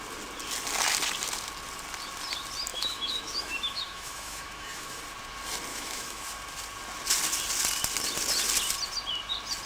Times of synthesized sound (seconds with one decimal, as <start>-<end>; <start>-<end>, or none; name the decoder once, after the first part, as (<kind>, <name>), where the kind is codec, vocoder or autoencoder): 2.7-5.0 (autoencoder, DAC-VAE); 5.7-6.3